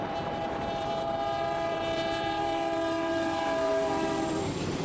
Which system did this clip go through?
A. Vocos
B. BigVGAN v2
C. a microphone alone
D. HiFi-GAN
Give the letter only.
B